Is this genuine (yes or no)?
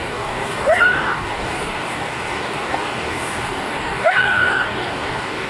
no